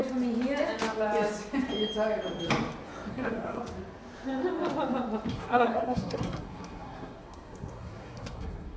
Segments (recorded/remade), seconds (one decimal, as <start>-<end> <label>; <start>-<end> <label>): 0.0-3.1 recorded; 3.1-3.6 remade; 3.6-5.3 recorded; 5.3-8.8 remade